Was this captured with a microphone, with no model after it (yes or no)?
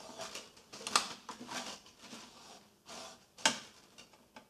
yes